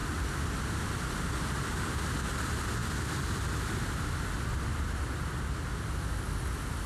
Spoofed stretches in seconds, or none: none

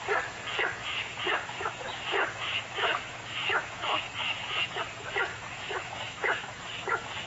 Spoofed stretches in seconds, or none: 0.8-4.8; 5.3-6.5

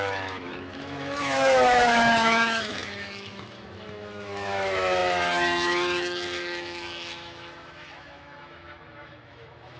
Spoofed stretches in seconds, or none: 0.0-9.8

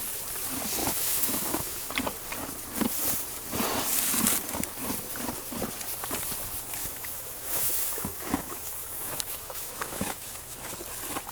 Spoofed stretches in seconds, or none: 0.8-1.9; 6.8-10.7

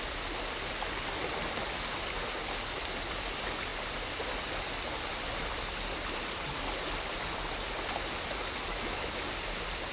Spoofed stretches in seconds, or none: 8.7-9.2

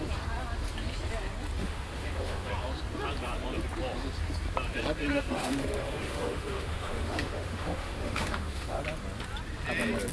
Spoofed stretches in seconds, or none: 1.6-2.5; 5.1-8.8

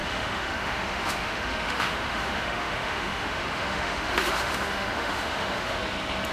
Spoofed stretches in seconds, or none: 0.0-5.8